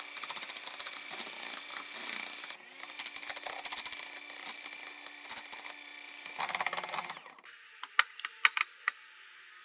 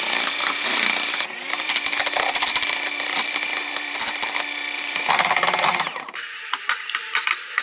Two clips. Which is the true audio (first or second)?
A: first